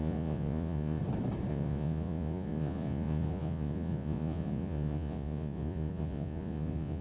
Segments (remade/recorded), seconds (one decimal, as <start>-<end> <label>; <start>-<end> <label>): 0.0-1.0 remade; 1.0-1.5 recorded; 1.5-7.0 remade